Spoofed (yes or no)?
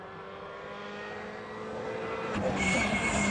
no